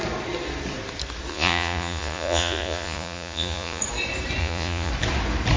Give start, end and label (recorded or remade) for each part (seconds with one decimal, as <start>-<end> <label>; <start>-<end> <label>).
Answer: 0.0-1.3 recorded; 1.3-3.8 remade; 3.8-4.4 recorded; 4.4-4.9 remade; 4.9-5.6 recorded